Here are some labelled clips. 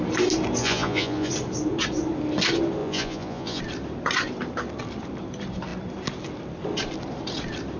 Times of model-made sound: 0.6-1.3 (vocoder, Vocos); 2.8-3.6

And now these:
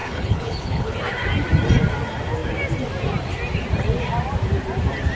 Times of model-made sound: 0.0-0.9 (codec, HILCodec)

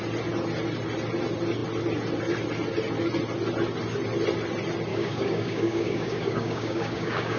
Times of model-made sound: 4.9-7.4 (codec, DAC)

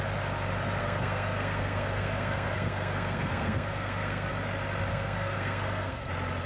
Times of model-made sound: 0.8-4.3 (codec, SNAC); 4.9-6.1

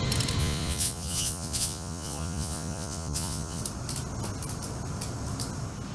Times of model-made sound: 0.4-3.6 (vocoder, Vocos)

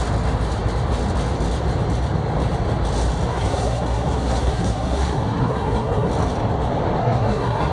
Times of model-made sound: 3.3-6.1 (codec, SNAC); 7.0-7.7

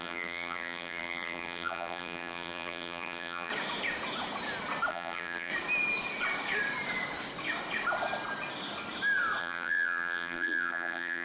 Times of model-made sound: 0.0-3.5 (vocoder, BigVGAN v2); 4.9-5.5; 9.4-11.2